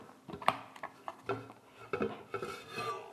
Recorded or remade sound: recorded